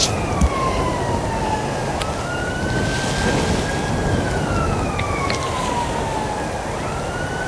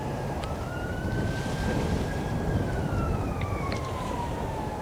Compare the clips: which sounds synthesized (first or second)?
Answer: second